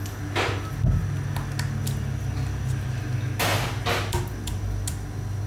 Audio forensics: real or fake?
real